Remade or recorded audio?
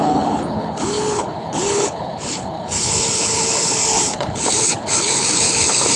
remade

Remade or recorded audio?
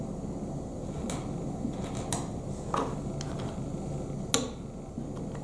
recorded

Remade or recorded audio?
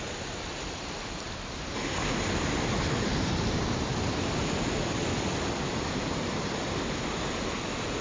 recorded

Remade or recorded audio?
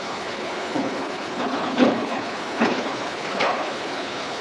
remade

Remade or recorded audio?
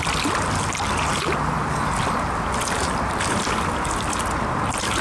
recorded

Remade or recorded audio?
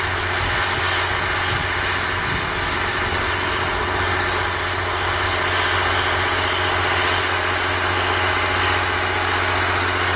recorded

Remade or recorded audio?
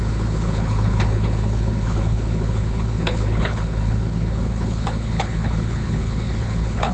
remade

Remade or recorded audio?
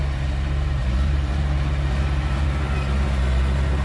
recorded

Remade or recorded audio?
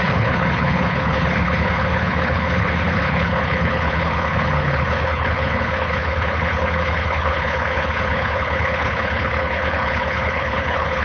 remade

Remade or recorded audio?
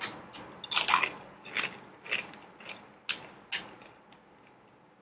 recorded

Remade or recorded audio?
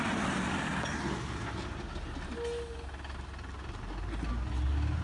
recorded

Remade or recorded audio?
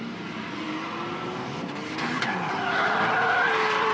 recorded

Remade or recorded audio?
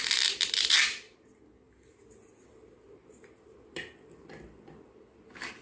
recorded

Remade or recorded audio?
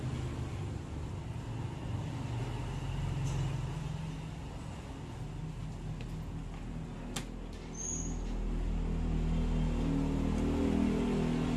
recorded